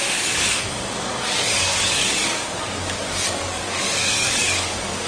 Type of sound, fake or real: fake